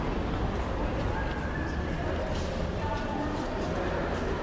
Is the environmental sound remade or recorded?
recorded